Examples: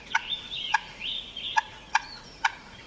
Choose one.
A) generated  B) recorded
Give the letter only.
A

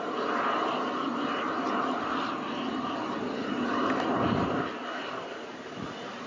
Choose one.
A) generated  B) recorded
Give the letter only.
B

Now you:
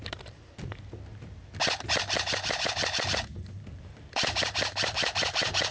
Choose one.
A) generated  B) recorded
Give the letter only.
A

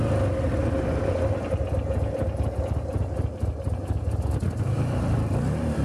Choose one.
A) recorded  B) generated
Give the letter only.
A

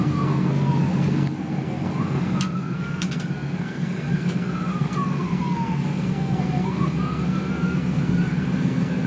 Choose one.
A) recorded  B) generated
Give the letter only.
B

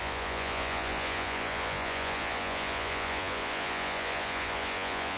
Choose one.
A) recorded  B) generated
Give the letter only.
B